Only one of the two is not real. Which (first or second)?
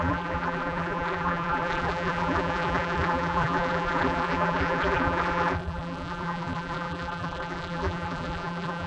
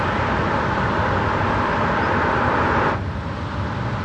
first